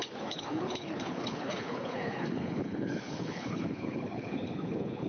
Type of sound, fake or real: fake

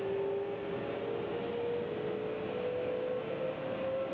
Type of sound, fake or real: real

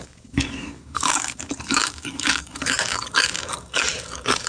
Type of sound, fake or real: fake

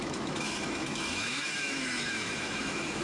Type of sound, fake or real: fake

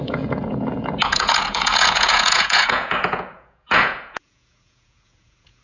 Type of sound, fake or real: fake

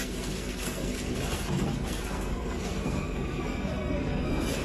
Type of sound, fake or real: fake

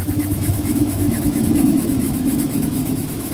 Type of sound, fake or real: fake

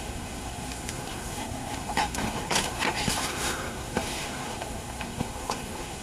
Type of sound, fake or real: fake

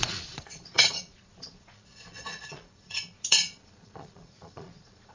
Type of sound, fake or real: fake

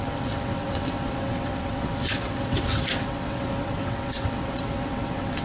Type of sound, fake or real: fake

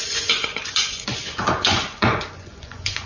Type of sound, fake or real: fake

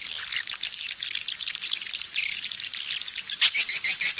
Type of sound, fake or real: real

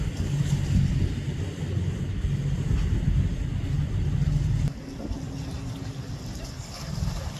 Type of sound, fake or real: real